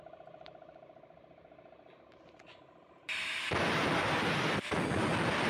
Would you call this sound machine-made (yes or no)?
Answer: yes